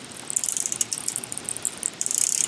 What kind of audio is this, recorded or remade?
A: remade